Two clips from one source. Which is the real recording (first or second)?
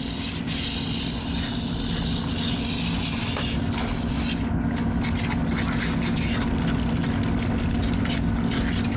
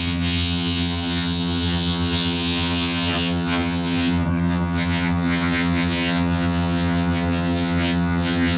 first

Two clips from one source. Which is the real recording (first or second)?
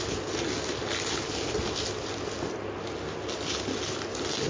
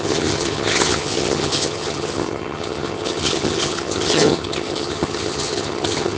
first